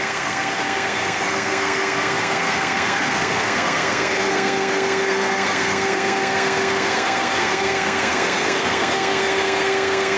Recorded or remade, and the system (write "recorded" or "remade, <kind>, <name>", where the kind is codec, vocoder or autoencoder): remade, codec, SNAC